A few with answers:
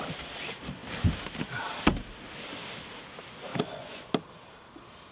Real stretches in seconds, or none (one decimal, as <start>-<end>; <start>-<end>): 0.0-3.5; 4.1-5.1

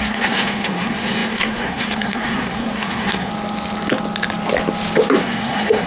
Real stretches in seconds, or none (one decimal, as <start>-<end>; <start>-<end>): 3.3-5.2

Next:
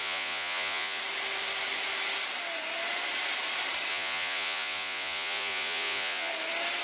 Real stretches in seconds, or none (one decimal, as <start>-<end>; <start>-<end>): 1.0-3.9; 6.3-6.8

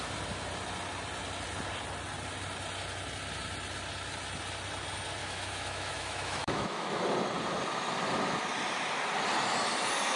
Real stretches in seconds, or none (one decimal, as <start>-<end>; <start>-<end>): 0.0-5.2; 7.0-10.2

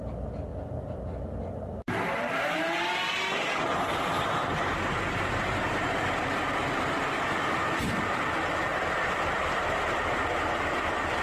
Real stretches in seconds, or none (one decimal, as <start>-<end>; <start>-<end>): 0.0-8.7; 9.8-11.2